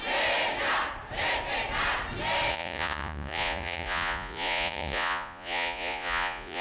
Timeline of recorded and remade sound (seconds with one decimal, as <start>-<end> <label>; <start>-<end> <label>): 0.0-2.5 recorded; 2.5-6.6 remade